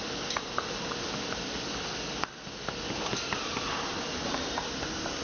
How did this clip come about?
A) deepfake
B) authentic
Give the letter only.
B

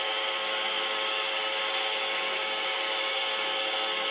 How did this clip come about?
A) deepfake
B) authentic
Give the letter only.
A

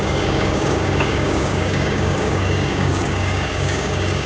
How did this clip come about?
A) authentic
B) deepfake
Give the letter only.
B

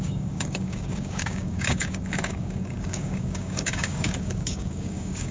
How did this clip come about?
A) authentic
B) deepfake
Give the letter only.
B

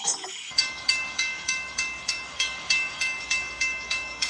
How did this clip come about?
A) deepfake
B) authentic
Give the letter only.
A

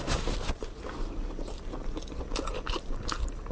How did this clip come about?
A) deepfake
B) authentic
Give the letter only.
B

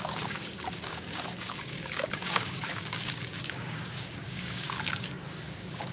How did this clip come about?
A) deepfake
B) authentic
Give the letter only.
A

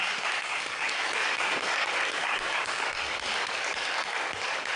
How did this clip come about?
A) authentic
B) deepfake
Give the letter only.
B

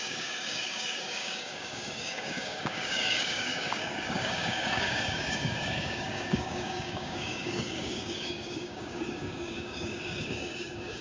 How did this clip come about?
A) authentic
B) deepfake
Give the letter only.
B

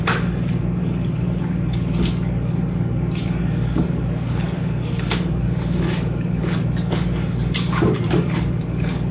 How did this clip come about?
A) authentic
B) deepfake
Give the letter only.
B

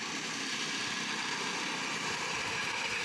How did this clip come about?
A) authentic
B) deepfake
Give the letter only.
A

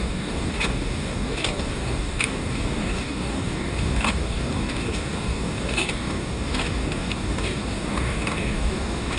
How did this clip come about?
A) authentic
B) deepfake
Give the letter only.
B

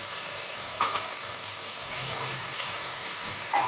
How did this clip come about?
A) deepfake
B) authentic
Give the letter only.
A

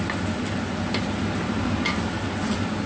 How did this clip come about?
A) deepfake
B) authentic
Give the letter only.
B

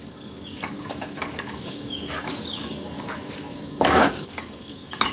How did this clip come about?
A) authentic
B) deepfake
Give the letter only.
B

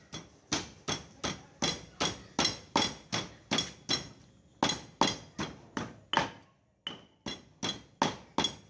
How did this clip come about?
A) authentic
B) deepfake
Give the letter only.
A